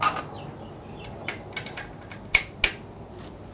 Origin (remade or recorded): recorded